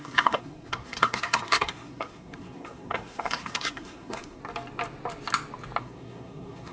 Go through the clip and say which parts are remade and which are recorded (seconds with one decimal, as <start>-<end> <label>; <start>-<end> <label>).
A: 0.0-4.4 remade; 4.4-5.8 recorded; 5.8-6.7 remade